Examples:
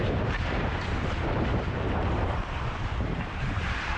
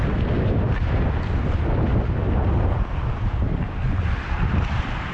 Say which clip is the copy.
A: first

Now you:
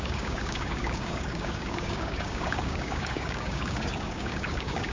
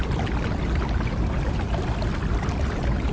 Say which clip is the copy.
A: first